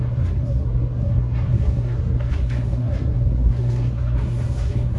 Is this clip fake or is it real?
fake